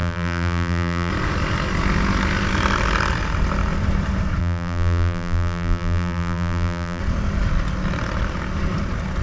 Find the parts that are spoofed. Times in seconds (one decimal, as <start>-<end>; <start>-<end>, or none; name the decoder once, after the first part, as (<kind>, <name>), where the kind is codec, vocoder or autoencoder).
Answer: 0.0-1.1 (vocoder, BigVGAN v2); 4.4-7.0